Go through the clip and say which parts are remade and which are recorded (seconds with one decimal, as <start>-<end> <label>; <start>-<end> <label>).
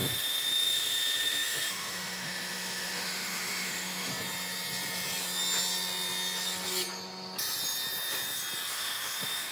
0.0-4.1 remade; 4.1-8.7 recorded; 8.7-9.5 remade